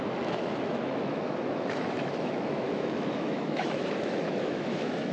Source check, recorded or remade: remade